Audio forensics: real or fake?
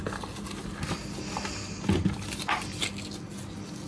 real